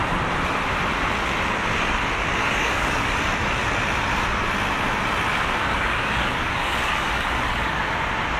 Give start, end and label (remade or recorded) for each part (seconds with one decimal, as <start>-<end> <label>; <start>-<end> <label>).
0.0-2.4 recorded; 2.4-3.2 remade; 3.2-5.3 recorded; 5.3-7.8 remade; 7.8-8.4 recorded